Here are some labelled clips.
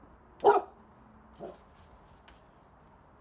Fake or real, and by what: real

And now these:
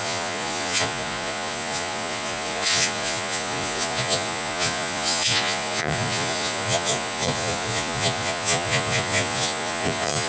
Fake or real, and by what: fake, vocoder, Vocos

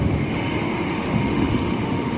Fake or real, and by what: fake, autoencoder, DAC-VAE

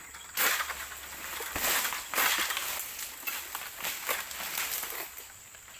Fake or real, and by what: real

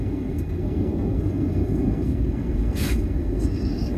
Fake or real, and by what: fake, codec, SNAC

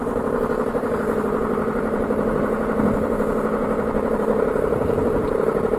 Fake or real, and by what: fake, vocoder, BigVGAN v2